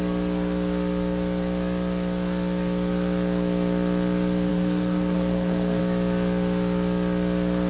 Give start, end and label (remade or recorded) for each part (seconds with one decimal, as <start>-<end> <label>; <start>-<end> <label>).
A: 0.0-4.5 recorded; 4.5-5.8 remade; 5.8-7.7 recorded